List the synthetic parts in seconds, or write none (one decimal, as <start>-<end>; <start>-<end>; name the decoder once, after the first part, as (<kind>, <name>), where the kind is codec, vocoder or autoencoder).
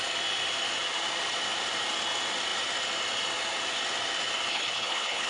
4.5-5.3 (codec, HILCodec)